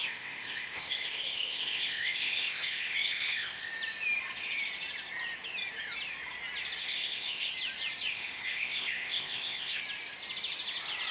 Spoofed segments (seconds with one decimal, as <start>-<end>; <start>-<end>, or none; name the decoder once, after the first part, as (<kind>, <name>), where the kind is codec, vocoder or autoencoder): 0.0-3.7 (codec, ZipCodec); 6.8-7.5; 8.1-9.8